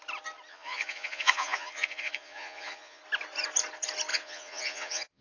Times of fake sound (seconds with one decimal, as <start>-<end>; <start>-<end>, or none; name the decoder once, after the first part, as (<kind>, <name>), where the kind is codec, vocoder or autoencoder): 0.5-3.0 (vocoder, Vocos); 4.1-5.2